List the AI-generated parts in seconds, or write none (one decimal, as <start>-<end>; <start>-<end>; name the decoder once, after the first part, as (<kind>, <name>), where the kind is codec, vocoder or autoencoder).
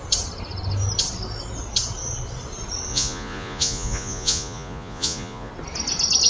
2.9-5.5 (vocoder, Vocos)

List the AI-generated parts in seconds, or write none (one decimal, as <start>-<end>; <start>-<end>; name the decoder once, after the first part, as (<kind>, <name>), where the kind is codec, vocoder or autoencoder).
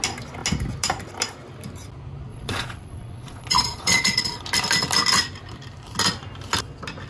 2.3-4.4 (vocoder, Vocos)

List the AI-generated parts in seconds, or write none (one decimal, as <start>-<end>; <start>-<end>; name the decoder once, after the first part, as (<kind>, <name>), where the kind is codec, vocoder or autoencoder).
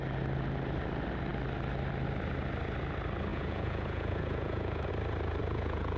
3.3-4.9 (vocoder, Vocos); 5.4-6.0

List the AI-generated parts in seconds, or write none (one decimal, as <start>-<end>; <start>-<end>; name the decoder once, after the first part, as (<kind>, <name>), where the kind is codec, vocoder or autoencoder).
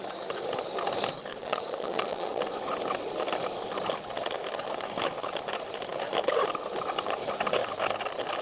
1.3-2.4 (vocoder, Vocos)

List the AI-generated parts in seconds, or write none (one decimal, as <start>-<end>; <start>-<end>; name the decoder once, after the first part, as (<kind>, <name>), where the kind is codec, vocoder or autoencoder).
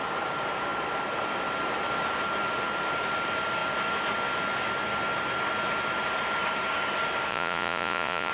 7.3-8.3 (vocoder, Vocos)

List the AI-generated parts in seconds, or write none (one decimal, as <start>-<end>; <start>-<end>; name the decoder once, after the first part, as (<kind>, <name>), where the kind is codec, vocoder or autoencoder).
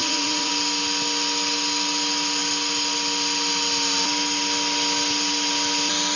0.0-0.5 (vocoder, Vocos)